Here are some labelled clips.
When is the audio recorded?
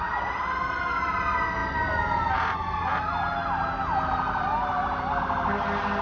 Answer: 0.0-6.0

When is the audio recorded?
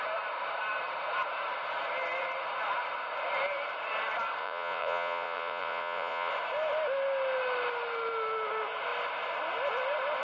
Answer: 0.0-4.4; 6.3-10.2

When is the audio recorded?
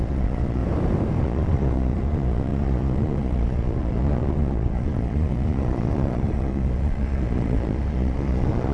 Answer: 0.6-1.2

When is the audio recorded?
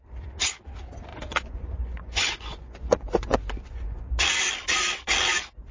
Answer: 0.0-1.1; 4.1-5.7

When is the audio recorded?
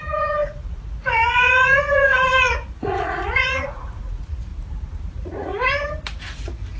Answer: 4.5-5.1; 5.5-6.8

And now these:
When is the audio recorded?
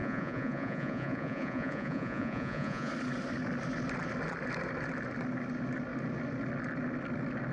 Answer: 2.9-7.5